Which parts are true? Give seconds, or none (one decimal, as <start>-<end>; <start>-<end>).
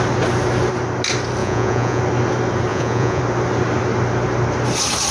0.0-1.4; 2.0-2.7; 3.2-5.1